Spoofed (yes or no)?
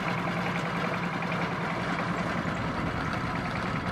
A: no